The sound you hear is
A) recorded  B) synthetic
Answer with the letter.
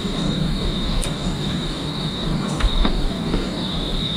B